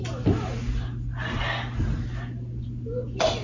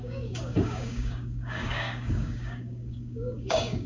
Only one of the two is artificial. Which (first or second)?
second